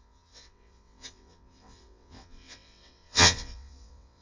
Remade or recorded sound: remade